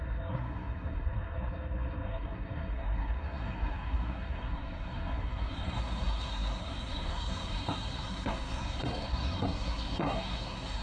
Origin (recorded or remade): remade